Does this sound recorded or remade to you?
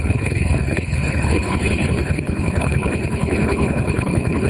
remade